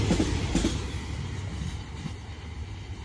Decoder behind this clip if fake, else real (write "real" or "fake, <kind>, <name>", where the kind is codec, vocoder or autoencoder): real